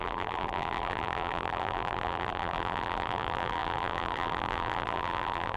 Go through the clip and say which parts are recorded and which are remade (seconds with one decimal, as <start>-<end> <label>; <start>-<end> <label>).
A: 0.0-5.6 remade